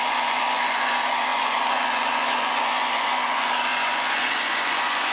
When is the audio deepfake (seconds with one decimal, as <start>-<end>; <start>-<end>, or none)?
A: 0.0-5.1

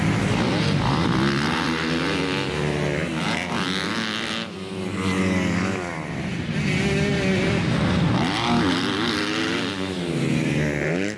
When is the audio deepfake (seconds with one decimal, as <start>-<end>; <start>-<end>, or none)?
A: none

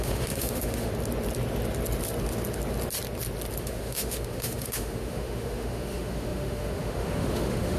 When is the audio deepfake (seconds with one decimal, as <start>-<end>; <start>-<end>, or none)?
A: 0.0-0.9; 3.6-7.8

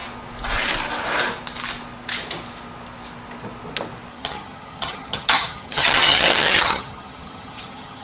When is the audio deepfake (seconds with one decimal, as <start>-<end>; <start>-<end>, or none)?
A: 4.1-8.0

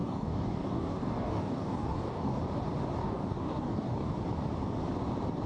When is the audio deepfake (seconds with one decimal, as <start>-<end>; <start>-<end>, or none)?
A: 0.0-2.4; 3.0-4.1